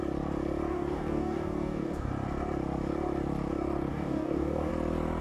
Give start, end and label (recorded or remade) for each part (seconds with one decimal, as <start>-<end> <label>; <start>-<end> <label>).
0.0-0.7 recorded; 0.7-2.1 remade; 2.1-3.9 recorded; 3.9-4.7 remade; 4.7-5.2 recorded